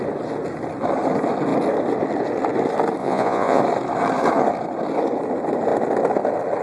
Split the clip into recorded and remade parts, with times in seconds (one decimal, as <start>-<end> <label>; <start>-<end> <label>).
0.0-3.0 recorded; 3.0-3.6 remade; 3.6-6.6 recorded